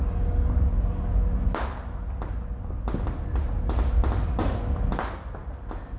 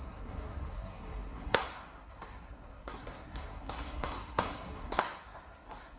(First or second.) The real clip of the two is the first